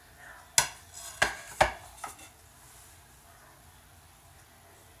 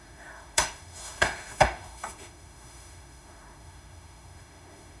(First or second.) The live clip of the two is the first